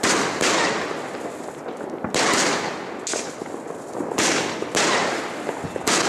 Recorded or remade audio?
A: recorded